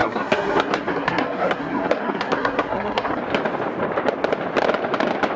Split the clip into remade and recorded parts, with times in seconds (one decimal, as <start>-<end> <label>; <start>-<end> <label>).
0.0-3.2 remade; 3.2-5.4 recorded